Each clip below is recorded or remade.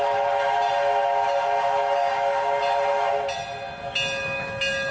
recorded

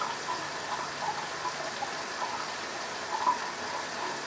recorded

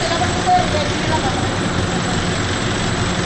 recorded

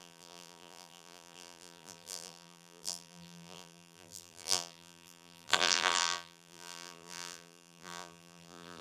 remade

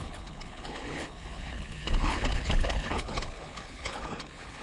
remade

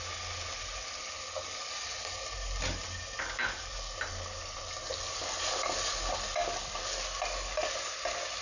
recorded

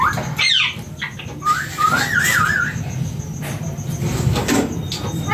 recorded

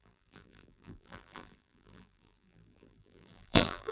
remade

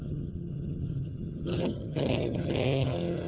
remade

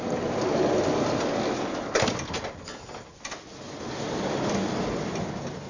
recorded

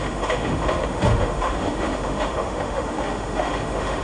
remade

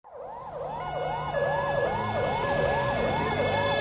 recorded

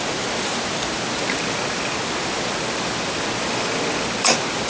recorded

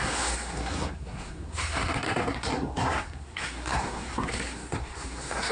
remade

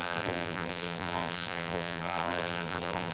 remade